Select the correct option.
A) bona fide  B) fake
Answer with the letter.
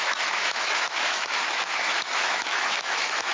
B